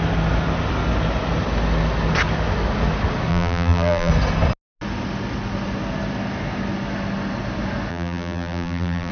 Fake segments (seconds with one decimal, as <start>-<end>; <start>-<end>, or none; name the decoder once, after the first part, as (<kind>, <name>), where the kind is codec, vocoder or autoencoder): 3.3-4.1 (vocoder, BigVGAN v2); 7.9-9.1